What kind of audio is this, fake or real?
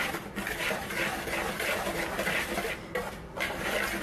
real